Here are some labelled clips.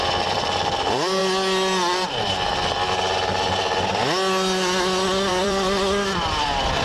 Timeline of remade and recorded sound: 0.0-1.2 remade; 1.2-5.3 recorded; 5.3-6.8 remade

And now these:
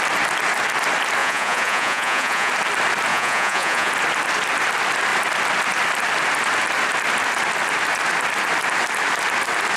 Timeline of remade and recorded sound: 0.0-1.2 recorded; 1.2-2.5 remade; 2.5-3.1 recorded; 3.1-3.9 remade; 3.9-9.8 recorded

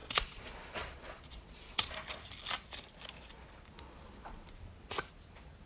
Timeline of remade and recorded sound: 0.0-1.9 remade; 1.9-5.7 recorded

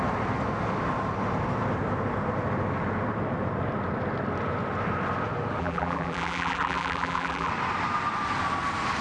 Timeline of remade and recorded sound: 0.0-5.6 recorded; 5.6-7.5 remade; 7.5-9.0 recorded

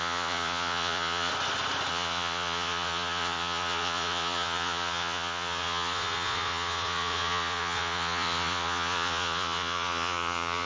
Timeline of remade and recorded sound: 0.0-1.3 remade; 1.3-1.9 recorded; 1.9-10.7 remade